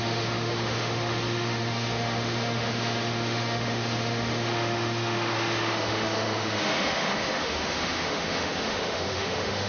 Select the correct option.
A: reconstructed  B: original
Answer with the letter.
A